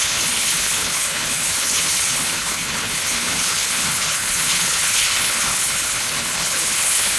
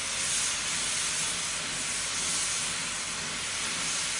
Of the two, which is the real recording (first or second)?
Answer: second